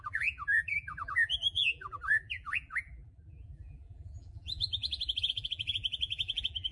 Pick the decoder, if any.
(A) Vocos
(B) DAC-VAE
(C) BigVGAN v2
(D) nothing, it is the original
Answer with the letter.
C